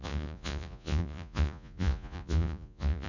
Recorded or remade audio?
remade